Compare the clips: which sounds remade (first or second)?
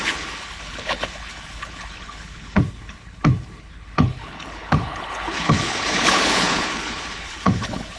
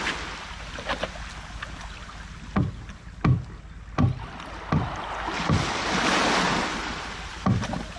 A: first